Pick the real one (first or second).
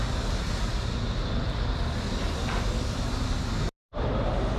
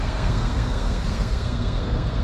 first